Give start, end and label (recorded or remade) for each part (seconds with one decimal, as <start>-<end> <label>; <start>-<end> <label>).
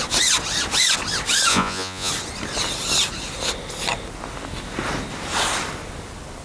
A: 0.0-1.5 recorded; 1.5-2.1 remade; 2.1-6.4 recorded